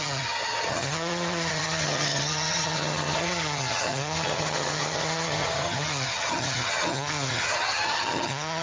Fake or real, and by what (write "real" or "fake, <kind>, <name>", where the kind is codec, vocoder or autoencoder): fake, vocoder, HiFi-GAN